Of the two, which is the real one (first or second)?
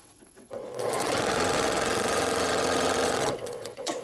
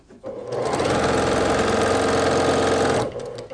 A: second